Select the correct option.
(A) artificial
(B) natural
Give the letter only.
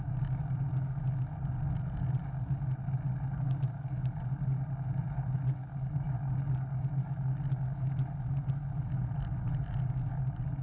B